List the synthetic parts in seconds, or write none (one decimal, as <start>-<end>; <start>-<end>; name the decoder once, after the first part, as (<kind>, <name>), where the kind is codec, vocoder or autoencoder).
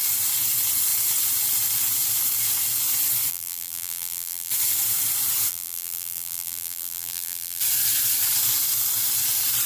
3.3-4.5 (vocoder, BigVGAN v2); 5.5-7.6